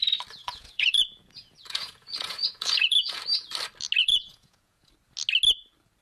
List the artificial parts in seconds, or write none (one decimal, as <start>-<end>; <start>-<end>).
0.4-3.2; 4.0-4.9